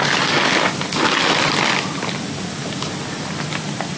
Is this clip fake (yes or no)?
no